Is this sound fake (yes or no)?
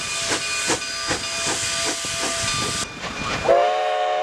no